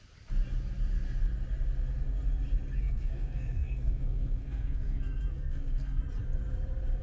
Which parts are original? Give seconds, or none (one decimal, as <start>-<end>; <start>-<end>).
0.0-2.8; 6.0-7.0